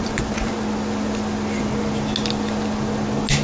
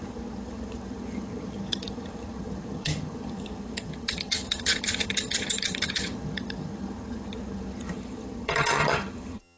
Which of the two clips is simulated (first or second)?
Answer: second